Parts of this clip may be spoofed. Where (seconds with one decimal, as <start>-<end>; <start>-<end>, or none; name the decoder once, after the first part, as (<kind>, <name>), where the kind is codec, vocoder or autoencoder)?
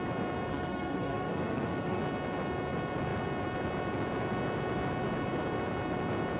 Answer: 0.5-2.0 (codec, SNAC)